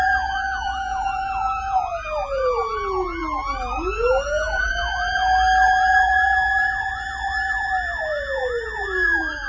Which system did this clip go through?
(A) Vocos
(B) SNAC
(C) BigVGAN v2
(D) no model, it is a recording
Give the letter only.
A